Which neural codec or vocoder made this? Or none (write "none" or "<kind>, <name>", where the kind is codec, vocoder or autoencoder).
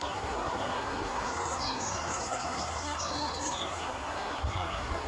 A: codec, SNAC